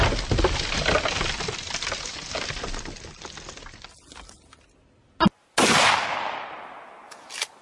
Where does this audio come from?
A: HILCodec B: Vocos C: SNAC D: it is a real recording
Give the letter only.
D